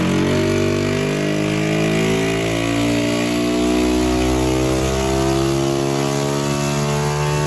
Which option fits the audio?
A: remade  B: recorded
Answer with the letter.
B